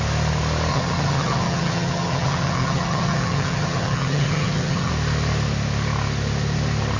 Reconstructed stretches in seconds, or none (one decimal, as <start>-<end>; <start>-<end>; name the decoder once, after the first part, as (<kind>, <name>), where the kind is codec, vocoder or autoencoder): 0.7-4.9 (vocoder, HiFi-GAN)